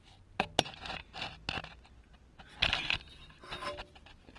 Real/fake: real